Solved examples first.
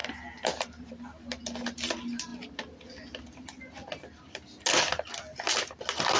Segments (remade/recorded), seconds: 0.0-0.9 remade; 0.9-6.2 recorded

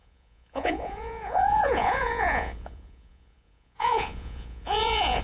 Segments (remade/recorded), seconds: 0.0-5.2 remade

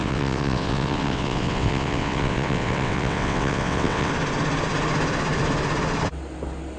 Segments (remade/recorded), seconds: 0.0-4.1 remade; 4.1-6.8 recorded

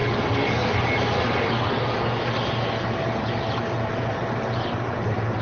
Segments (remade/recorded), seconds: 0.0-5.4 recorded

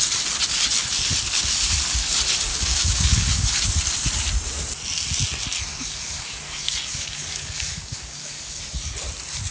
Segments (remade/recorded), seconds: 0.0-2.5 recorded; 2.5-3.5 remade; 3.5-5.7 recorded; 5.7-8.6 remade; 8.6-9.5 recorded

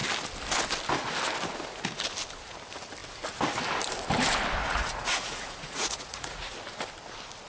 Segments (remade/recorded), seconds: 0.0-4.6 recorded; 4.6-6.5 remade; 6.5-7.5 recorded